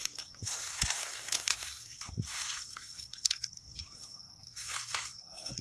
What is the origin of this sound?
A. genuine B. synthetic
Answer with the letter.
B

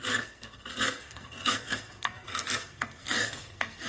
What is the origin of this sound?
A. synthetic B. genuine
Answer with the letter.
A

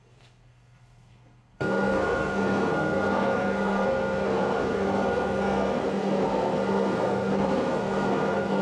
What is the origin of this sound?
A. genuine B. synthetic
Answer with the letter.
B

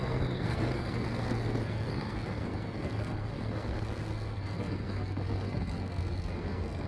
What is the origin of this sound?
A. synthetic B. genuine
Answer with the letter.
A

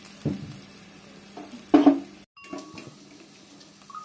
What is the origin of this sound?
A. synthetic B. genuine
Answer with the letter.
B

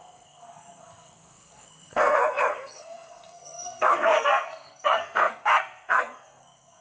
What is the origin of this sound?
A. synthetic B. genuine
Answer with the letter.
A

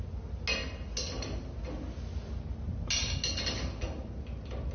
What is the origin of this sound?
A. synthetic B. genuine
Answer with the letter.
B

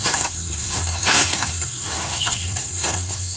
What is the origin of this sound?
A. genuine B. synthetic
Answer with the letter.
B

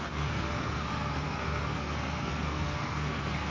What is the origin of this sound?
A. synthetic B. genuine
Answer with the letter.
A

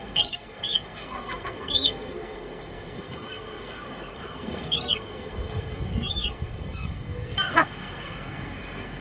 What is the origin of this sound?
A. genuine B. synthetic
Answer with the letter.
B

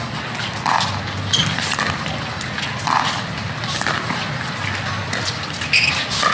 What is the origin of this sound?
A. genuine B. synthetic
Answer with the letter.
A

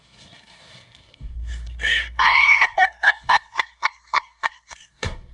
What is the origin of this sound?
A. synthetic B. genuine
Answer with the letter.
A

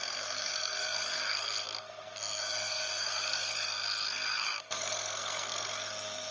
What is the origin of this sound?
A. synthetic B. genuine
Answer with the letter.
A